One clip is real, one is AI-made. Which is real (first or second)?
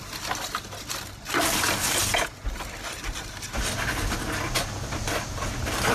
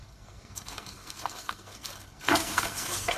first